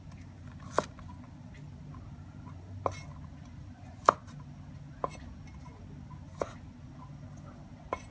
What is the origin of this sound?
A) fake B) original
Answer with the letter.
B